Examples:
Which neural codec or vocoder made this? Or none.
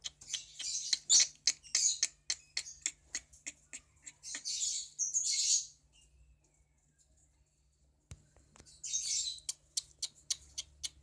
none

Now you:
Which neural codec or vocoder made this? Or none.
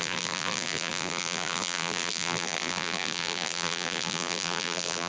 vocoder, BigVGAN v2